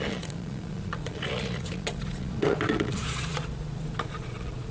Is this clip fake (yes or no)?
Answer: yes